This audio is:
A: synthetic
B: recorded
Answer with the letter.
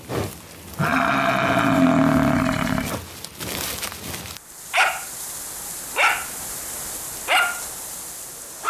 B